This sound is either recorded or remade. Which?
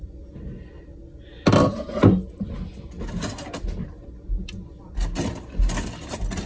recorded